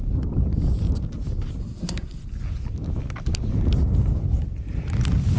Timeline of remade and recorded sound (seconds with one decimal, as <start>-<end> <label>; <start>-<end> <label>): 0.0-1.6 recorded; 1.6-2.2 remade; 2.2-5.4 recorded